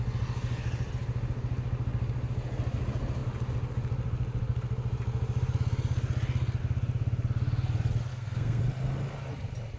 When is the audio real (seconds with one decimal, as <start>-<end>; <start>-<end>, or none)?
0.0-8.1; 8.6-9.8